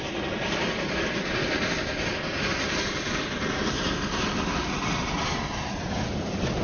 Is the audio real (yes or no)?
yes